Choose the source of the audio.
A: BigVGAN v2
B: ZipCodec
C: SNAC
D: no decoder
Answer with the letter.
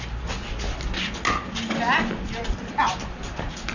D